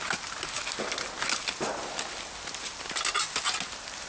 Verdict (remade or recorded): recorded